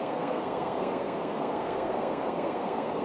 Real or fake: fake